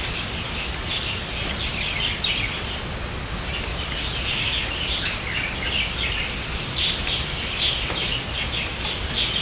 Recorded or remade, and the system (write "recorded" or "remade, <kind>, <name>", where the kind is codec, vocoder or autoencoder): recorded